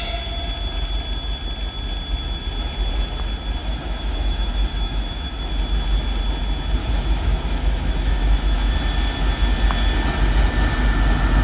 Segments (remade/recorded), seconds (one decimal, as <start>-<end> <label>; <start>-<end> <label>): 0.0-3.6 recorded; 3.6-5.5 remade; 5.5-6.8 recorded; 6.8-8.7 remade; 8.7-11.4 recorded